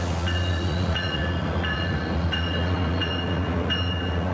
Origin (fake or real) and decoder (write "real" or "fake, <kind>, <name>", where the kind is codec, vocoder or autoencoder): fake, vocoder, Vocos